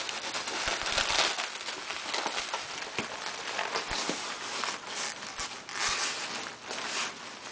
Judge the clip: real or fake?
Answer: real